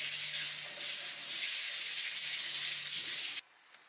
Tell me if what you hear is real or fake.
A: real